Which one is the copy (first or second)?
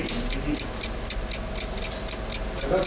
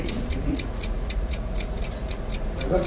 second